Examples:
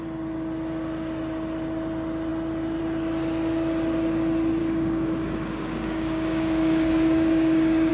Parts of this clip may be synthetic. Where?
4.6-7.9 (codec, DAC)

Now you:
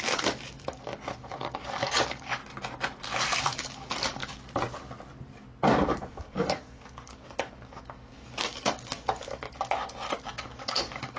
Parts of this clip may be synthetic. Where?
0.0-2.4 (codec, DAC); 3.4-4.2; 6.1-9.4; 10.3-11.2

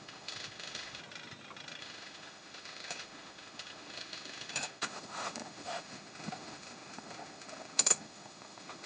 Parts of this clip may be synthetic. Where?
0.0-1.0 (autoencoder, DAC-VAE); 1.8-8.9

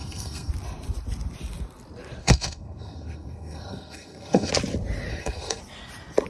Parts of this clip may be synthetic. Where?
0.0-0.5 (codec, SNAC); 2.2-4.5; 5.1-5.6

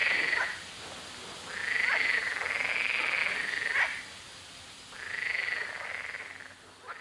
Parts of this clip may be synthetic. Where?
0.0-0.8 (vocoder, BigVGAN v2); 1.6-2.7; 3.2-6.2

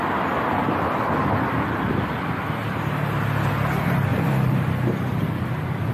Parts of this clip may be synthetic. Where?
4.1-5.9 (vocoder, BigVGAN v2)

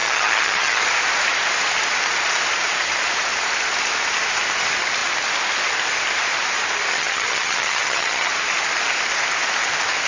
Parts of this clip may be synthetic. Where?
0.0-0.8 (vocoder, HiFi-GAN); 6.9-8.3

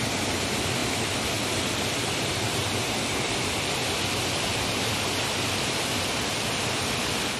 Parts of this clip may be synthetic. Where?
none